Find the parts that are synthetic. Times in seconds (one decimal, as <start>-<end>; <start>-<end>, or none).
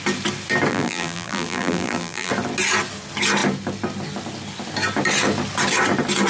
0.7-2.3